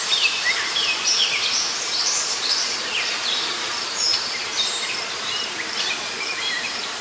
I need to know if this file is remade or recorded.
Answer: remade